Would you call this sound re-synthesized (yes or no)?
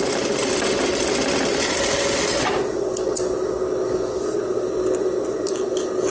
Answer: no